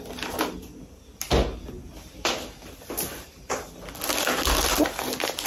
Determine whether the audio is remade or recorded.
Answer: recorded